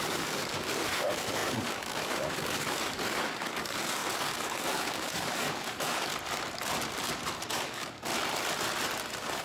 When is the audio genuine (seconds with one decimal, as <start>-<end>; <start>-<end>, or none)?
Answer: 6.1-7.5; 8.1-9.4